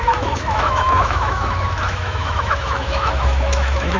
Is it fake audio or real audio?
fake